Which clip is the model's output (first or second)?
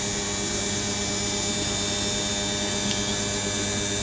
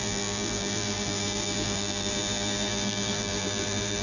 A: second